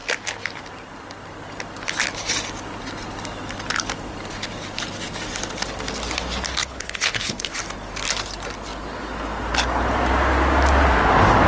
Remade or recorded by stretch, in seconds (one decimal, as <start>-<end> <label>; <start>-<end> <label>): 0.0-6.6 recorded; 6.6-7.6 remade; 7.6-11.5 recorded